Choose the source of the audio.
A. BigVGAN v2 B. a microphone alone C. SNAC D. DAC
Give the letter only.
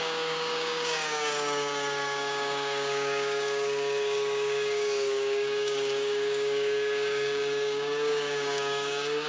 D